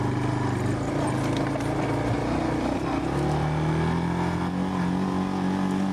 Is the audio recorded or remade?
recorded